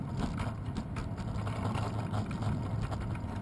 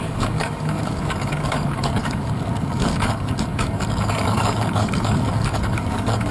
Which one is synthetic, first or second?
second